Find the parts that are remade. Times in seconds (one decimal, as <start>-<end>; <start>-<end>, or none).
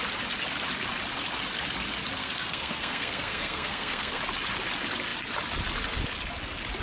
2.2-4.2